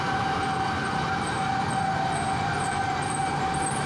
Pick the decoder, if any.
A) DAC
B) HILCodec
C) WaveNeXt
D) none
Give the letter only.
D